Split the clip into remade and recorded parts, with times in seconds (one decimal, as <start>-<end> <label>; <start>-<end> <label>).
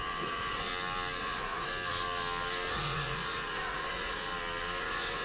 0.0-0.7 remade; 0.7-1.2 recorded; 1.2-1.7 remade; 1.7-2.7 recorded; 2.7-4.3 remade; 4.3-4.8 recorded; 4.8-5.2 remade